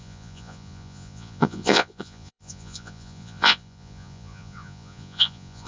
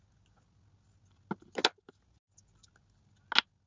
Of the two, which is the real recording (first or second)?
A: second